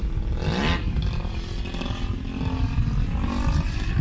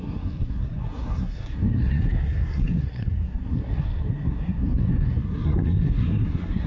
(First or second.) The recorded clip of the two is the first